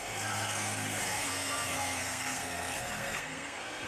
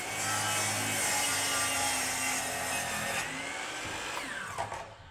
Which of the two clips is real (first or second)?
second